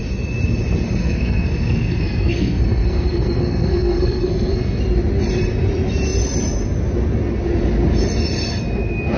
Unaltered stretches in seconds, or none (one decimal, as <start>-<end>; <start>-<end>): 0.0-1.0; 4.8-9.2